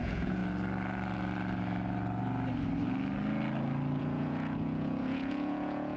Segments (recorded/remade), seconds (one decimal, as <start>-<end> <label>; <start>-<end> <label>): 0.0-0.4 remade; 0.4-4.0 recorded; 4.0-6.0 remade